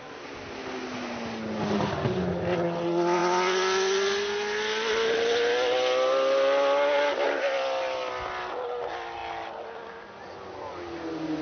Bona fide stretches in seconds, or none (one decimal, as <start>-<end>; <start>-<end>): 0.0-11.4